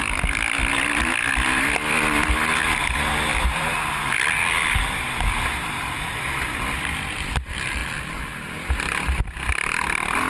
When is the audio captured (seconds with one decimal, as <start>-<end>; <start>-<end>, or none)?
0.0-3.3; 6.3-10.3